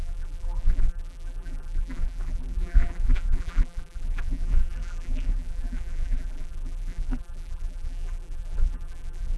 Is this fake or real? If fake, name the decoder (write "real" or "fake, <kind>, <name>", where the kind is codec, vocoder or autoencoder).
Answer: fake, vocoder, BigVGAN v2